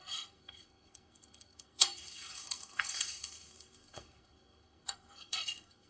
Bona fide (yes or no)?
no